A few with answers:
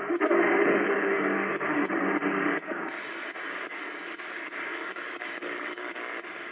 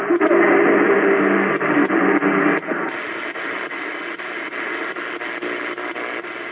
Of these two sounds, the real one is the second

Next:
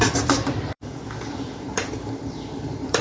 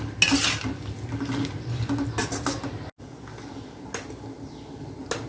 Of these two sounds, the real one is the second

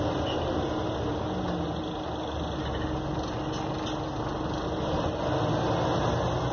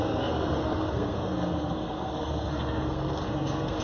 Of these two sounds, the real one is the first